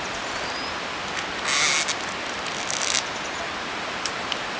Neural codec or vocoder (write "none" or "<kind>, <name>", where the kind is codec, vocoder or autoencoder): none